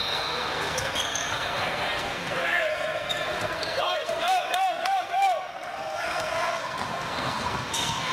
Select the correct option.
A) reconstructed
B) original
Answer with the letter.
A